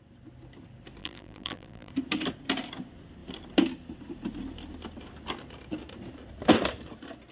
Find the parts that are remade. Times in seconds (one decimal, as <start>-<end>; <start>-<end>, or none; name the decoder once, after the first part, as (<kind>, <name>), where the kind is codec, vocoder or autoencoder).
1.0-1.9 (vocoder, BigVGAN v2)